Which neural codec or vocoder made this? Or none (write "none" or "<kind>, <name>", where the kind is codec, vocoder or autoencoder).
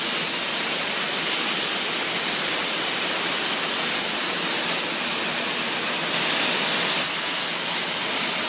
none